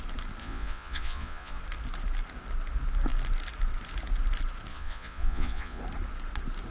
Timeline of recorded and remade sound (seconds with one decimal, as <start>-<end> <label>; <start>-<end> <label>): 0.0-0.4 recorded; 0.4-1.6 remade; 1.6-4.7 recorded; 4.7-5.8 remade; 5.8-6.7 recorded